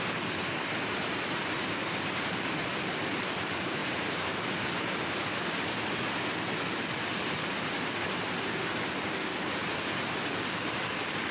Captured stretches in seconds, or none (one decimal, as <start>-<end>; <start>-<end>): 0.0-3.8; 5.0-11.3